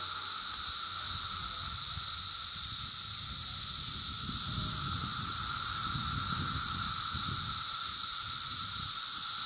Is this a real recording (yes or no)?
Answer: yes